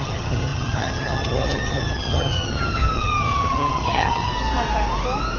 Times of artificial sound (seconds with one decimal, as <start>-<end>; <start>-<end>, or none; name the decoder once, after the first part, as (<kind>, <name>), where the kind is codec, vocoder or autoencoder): 0.0-4.3 (vocoder, HiFi-GAN)